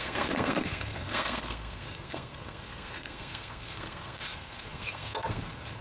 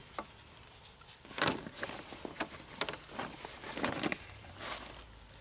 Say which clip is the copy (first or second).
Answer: first